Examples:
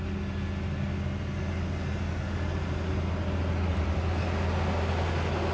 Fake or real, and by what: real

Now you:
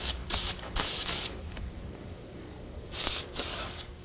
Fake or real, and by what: fake, codec, DAC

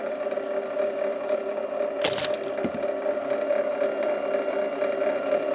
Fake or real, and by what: real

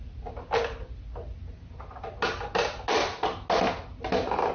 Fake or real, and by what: real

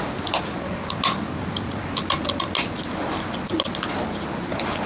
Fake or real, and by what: real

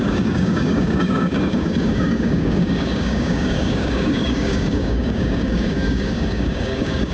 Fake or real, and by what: fake, codec, DAC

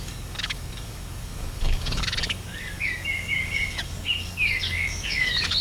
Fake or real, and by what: fake, codec, DAC